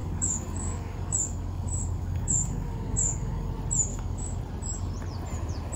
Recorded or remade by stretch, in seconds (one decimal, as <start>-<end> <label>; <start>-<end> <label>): 0.0-3.5 remade; 3.5-3.9 recorded; 3.9-4.4 remade; 4.4-5.8 recorded